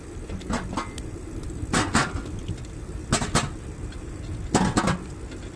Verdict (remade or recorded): recorded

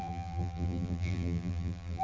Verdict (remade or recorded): remade